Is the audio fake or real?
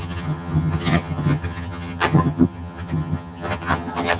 fake